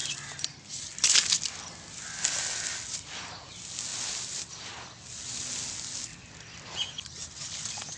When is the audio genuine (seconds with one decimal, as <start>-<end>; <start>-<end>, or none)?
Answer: 0.0-8.0